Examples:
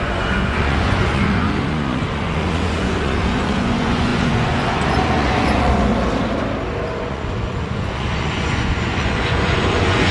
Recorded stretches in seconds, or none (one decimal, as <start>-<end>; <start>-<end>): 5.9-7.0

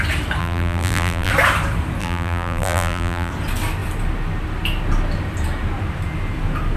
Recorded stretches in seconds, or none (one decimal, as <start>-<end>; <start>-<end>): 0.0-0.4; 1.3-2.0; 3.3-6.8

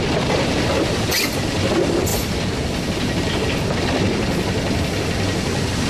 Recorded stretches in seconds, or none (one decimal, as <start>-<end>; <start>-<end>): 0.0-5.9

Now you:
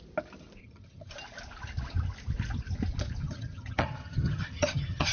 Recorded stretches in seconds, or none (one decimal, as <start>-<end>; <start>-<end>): 0.0-0.6; 1.1-3.2

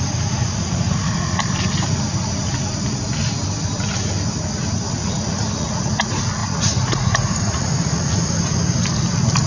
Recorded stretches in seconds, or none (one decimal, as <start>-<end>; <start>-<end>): 0.0-0.4; 1.4-4.8; 5.9-6.4; 8.3-9.5

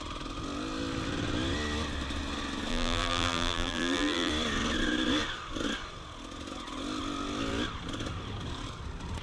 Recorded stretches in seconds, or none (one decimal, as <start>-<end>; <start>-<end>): 0.0-2.7; 4.3-9.2